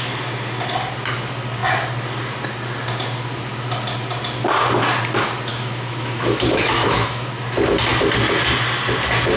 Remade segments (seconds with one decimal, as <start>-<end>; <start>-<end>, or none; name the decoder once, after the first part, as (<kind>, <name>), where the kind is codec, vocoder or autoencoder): 5.5-7.3 (autoencoder, DAC-VAE)